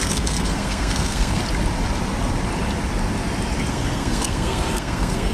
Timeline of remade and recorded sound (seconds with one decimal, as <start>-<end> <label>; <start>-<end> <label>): 0.0-1.4 remade; 1.4-3.7 recorded; 3.7-5.3 remade

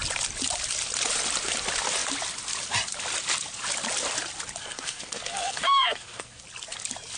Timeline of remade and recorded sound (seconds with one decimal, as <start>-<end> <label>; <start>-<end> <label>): 0.0-4.6 recorded; 4.6-6.4 remade; 6.4-7.2 recorded

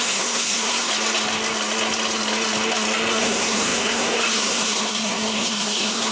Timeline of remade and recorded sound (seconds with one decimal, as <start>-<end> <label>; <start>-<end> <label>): 0.0-0.9 remade; 0.9-3.2 recorded; 3.2-6.1 remade

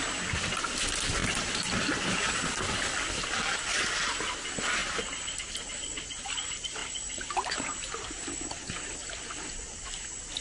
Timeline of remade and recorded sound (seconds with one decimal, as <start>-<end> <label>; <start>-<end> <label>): 0.0-10.4 recorded